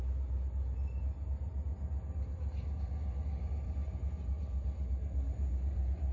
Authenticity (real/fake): real